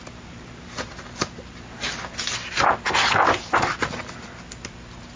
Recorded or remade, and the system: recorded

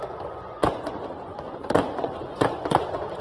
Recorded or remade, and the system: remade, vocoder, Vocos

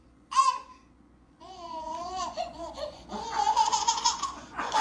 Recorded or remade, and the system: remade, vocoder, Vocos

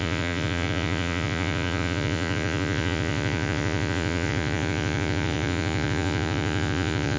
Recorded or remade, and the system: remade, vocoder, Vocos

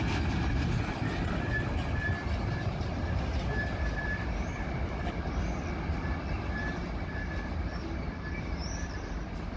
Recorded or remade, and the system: recorded